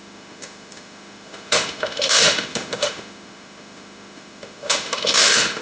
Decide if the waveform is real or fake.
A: fake